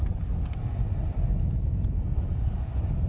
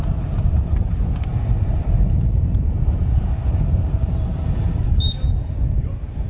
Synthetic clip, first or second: second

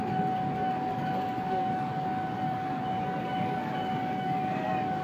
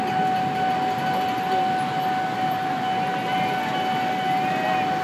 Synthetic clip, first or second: first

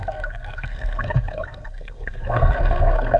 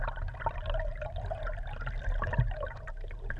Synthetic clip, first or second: first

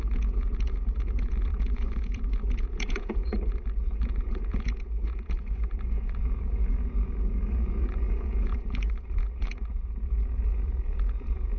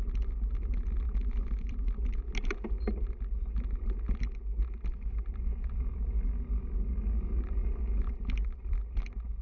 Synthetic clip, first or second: first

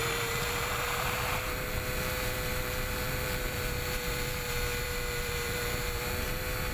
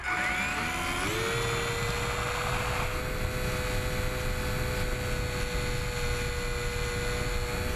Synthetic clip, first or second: first